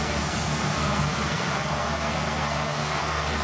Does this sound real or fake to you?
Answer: fake